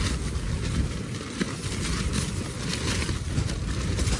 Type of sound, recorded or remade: recorded